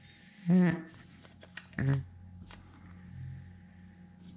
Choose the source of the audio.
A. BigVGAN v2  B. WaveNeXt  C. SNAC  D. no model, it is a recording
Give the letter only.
D